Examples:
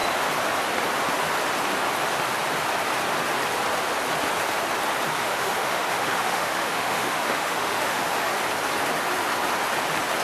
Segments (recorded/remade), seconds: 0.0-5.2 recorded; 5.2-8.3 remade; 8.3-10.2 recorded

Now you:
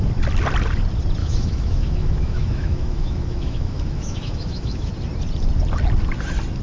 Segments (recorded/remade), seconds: 0.0-1.2 recorded; 1.2-4.9 remade; 4.9-6.6 recorded